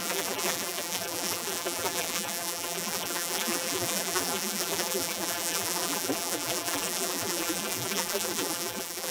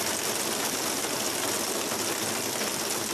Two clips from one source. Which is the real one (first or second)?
second